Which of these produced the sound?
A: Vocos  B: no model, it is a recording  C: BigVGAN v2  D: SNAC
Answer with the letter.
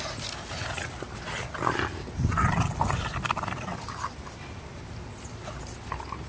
B